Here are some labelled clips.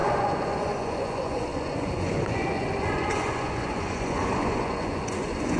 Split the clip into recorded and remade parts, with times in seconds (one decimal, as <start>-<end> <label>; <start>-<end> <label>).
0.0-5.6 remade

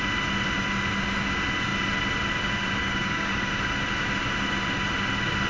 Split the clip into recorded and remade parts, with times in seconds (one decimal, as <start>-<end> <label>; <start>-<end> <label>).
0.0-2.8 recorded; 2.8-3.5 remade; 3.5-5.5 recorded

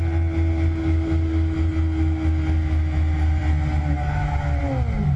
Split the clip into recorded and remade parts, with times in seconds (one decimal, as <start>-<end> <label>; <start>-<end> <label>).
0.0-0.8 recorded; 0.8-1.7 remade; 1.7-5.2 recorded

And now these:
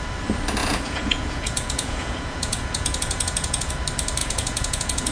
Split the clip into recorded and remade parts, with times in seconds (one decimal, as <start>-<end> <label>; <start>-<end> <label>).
0.0-0.6 recorded; 0.6-3.7 remade; 3.7-4.2 recorded; 4.2-5.1 remade